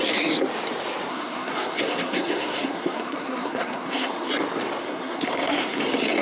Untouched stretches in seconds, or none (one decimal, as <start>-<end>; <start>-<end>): 0.0-1.1; 4.3-4.8; 5.8-6.2

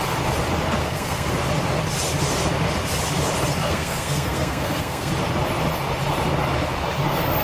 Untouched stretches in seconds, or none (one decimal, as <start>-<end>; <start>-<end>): 0.0-0.8; 1.3-3.6; 5.1-7.4

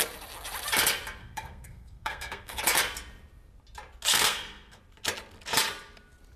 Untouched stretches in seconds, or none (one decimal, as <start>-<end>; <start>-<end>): 0.0-1.2; 2.6-4.1; 4.8-6.4

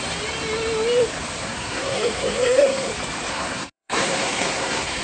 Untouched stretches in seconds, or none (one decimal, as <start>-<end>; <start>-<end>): 0.0-1.4; 2.9-3.3

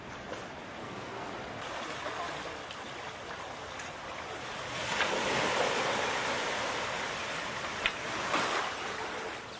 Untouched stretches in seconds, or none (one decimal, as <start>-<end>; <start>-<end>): 0.0-0.8; 1.3-9.6

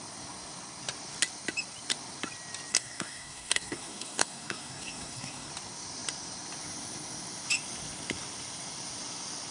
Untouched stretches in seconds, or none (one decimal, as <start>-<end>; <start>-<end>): 0.0-2.7; 5.5-9.5